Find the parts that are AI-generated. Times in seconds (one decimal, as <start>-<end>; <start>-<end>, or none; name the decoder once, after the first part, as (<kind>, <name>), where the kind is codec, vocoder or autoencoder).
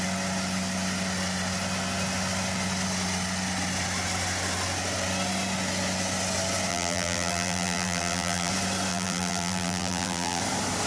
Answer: 6.7-8.5 (vocoder, BigVGAN v2); 8.9-10.4